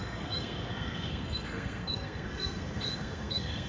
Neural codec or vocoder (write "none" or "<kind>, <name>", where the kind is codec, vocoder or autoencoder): codec, SNAC